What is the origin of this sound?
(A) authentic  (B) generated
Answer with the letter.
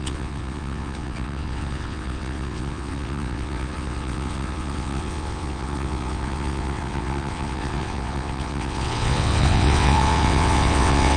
B